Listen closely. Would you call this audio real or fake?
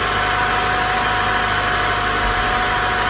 real